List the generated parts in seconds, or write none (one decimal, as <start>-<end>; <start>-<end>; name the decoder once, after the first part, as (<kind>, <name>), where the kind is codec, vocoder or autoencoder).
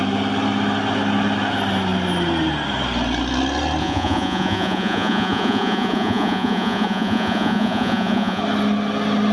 3.8-8.4 (vocoder, Vocos)